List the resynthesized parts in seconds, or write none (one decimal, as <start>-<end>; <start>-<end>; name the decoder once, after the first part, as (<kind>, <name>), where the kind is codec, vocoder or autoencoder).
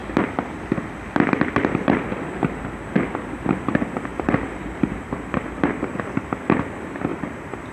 4.1-6.0 (vocoder, BigVGAN v2); 7.1-7.7